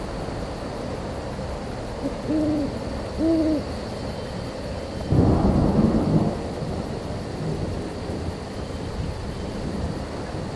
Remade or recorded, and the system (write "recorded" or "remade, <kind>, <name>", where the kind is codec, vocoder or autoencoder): recorded